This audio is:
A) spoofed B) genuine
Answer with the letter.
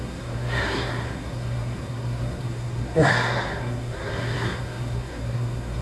A